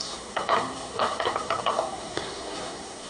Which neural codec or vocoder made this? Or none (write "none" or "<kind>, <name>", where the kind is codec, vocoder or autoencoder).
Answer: codec, SNAC